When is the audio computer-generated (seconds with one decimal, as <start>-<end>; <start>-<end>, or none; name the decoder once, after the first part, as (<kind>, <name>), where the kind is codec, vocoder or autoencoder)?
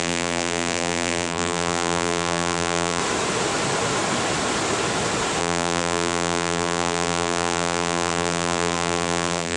0.0-3.0 (vocoder, BigVGAN v2); 5.4-9.6